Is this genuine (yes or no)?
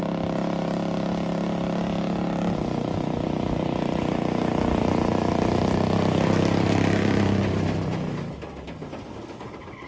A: yes